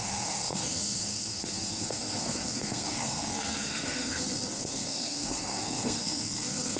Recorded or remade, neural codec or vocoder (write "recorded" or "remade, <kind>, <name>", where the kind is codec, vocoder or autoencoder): remade, codec, SNAC